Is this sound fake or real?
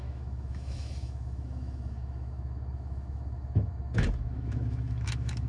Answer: fake